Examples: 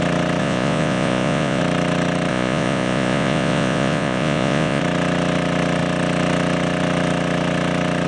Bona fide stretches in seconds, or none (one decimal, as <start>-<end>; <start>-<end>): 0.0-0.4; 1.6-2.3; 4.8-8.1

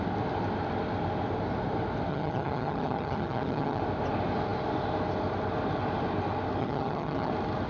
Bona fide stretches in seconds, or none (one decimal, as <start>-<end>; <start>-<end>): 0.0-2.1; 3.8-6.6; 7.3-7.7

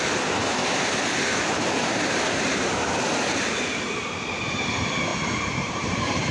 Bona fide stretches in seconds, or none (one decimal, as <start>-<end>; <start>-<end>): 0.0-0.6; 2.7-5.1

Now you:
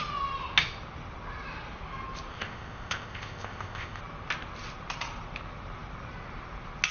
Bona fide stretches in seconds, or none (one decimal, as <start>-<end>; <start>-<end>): 0.0-2.3; 4.0-6.9